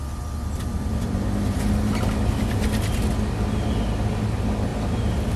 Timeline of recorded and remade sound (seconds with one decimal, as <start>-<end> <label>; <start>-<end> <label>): 0.0-5.4 recorded